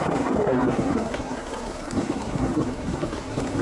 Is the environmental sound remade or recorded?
remade